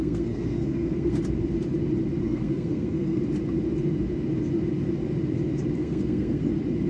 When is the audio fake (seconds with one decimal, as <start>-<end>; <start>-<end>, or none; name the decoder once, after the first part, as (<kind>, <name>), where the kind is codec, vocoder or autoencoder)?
0.0-1.2 (codec, SNAC); 2.2-3.2; 5.8-6.5